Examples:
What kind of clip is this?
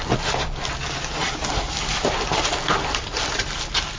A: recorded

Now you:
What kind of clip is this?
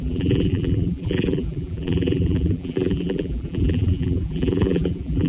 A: remade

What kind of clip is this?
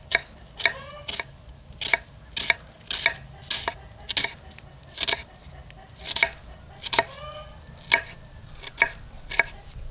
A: recorded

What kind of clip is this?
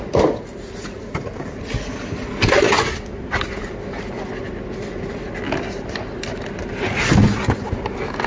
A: recorded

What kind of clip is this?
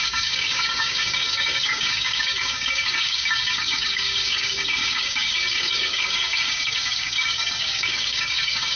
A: remade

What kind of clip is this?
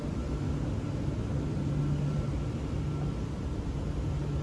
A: recorded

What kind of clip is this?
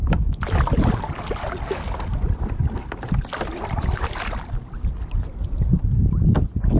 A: recorded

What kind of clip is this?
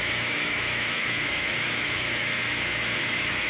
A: remade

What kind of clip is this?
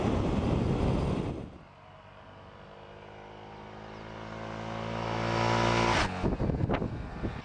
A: recorded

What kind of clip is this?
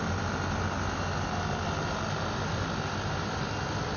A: recorded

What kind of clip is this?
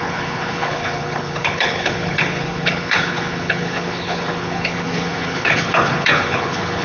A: remade